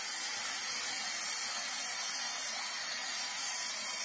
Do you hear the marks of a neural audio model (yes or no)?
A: no